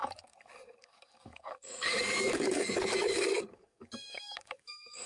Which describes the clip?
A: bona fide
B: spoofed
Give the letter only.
B